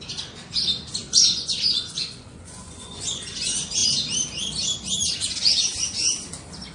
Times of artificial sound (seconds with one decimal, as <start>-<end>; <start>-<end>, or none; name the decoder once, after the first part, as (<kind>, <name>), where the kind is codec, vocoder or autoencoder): 1.0-3.3 (vocoder, Vocos)